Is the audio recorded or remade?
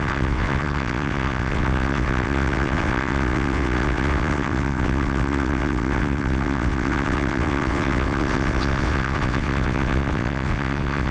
remade